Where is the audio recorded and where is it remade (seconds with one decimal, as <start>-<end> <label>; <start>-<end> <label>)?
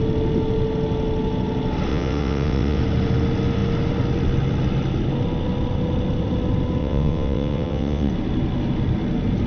0.0-1.9 recorded; 1.9-2.8 remade; 2.8-6.8 recorded; 6.8-8.1 remade; 8.1-9.5 recorded